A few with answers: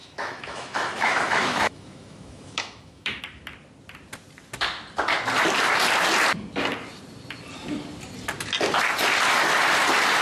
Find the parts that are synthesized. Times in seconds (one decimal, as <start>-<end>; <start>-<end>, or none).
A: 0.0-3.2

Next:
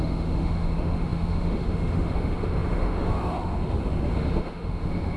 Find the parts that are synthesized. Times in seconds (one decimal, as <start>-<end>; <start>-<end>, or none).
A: 0.0-5.2

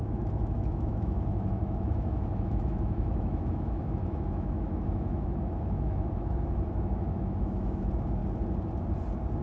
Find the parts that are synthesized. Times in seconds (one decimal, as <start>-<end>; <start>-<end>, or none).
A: 0.0-8.2

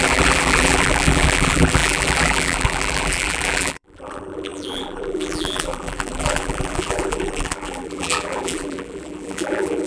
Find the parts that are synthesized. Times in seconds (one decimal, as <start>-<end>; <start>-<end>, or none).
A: 0.0-9.9